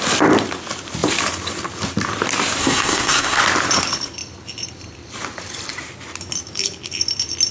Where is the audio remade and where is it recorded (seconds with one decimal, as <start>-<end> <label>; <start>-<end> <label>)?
0.0-2.6 recorded; 2.6-3.4 remade; 3.4-7.5 recorded